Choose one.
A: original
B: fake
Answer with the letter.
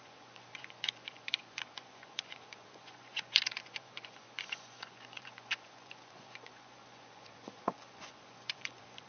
B